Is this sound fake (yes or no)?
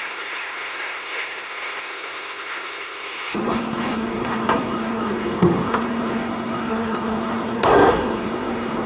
yes